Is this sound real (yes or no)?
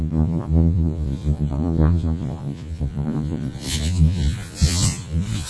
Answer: no